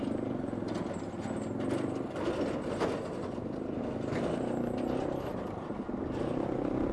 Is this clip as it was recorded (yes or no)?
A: yes